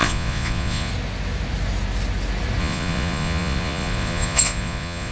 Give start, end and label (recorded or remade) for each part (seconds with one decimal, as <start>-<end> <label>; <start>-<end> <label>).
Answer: 0.0-0.9 remade; 0.9-2.6 recorded; 2.6-5.1 remade